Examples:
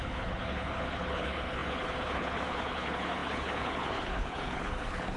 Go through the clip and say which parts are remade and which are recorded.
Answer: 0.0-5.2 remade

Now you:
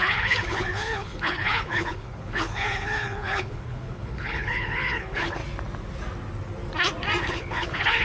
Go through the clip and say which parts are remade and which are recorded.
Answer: 0.0-5.4 remade; 5.4-7.2 recorded; 7.2-8.0 remade

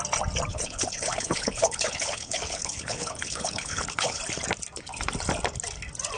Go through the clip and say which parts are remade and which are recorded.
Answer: 0.0-0.5 recorded; 0.5-4.2 remade; 4.2-6.2 recorded

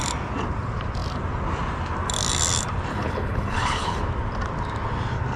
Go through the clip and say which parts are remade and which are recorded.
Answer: 0.0-2.9 recorded; 2.9-4.0 remade; 4.0-5.4 recorded

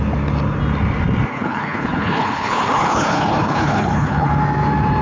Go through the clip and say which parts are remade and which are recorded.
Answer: 0.0-1.3 recorded; 1.3-4.3 remade; 4.3-5.0 recorded

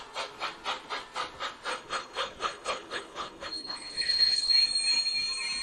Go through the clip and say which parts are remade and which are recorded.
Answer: 0.0-1.7 recorded; 1.7-4.5 remade; 4.5-5.6 recorded

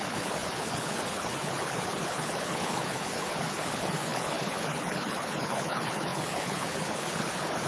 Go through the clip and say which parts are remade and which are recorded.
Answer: 0.0-7.7 remade